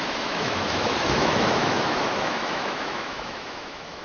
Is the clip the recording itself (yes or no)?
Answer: no